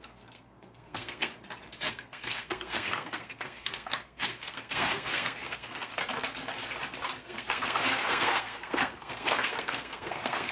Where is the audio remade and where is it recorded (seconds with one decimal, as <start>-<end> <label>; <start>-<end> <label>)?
0.0-1.3 remade; 1.3-1.9 recorded; 1.9-6.0 remade; 6.0-7.2 recorded; 7.2-10.5 remade